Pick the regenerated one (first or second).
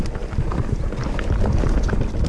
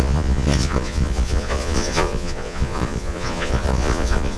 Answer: second